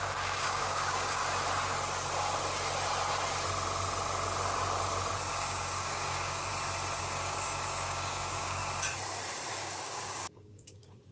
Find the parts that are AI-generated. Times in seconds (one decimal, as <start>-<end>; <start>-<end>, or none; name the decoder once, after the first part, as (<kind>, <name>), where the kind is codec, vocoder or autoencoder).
0.0-1.2 (codec, DAC); 5.3-6.5; 7.0-8.6; 9.5-11.1